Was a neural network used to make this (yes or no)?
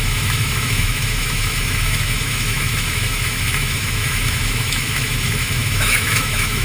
yes